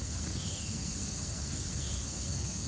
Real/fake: fake